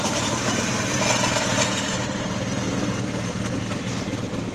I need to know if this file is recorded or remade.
remade